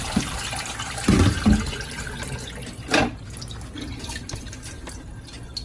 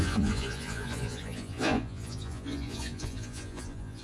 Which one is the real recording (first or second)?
first